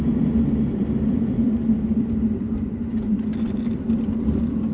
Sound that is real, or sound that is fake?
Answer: fake